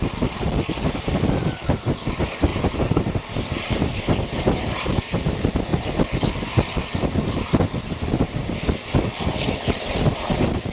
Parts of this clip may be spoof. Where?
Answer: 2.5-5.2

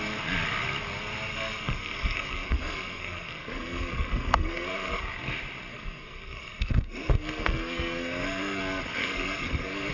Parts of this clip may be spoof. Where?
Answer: 1.3-5.0; 5.7-8.6; 9.0-9.9